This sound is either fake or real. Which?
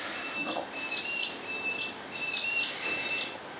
real